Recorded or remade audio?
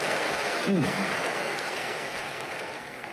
remade